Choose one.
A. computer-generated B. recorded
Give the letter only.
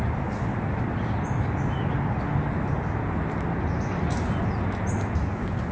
B